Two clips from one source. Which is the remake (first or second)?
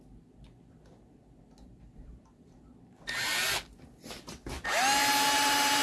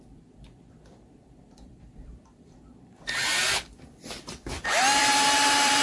second